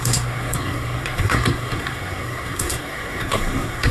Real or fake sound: fake